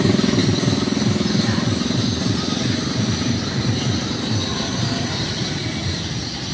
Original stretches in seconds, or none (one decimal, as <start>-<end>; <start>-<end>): 0.0-6.5